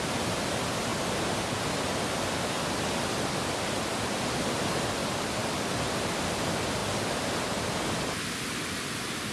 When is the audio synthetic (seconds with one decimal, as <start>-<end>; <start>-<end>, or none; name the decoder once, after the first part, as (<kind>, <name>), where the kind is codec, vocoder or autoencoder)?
none